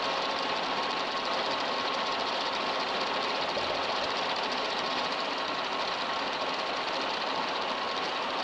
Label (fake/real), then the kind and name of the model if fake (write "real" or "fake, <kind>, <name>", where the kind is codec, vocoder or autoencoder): real